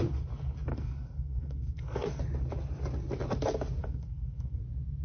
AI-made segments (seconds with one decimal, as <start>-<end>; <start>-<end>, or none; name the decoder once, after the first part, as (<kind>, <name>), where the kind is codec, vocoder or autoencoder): 0.7-2.2 (codec, SNAC); 3.8-4.6